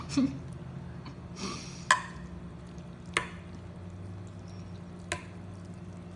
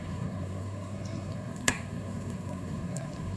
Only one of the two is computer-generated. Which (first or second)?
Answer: second